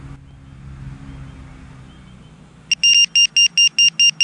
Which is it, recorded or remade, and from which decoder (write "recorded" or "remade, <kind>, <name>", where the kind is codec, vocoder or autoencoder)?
recorded